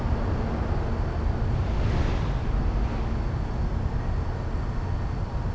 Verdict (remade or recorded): recorded